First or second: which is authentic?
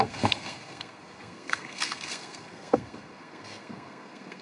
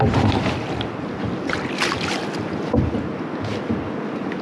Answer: second